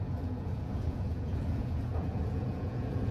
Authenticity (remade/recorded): remade